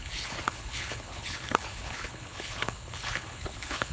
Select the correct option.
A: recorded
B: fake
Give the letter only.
B